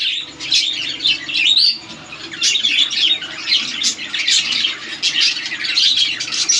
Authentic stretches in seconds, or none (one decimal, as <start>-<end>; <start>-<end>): 0.0-6.6